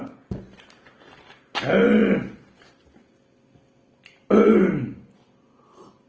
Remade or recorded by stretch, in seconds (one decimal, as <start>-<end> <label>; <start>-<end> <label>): 0.0-6.1 recorded